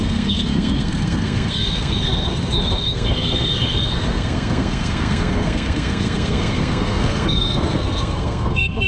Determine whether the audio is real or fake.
fake